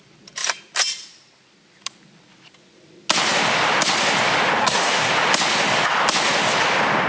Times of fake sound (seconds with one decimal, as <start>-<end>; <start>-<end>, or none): 4.6-5.1